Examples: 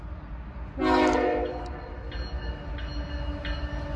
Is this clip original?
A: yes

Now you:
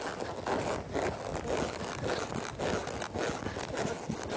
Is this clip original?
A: yes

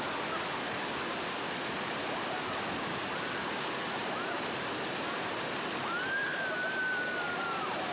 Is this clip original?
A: yes